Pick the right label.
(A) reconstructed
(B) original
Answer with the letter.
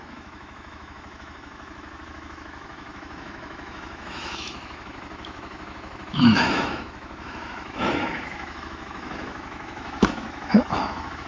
A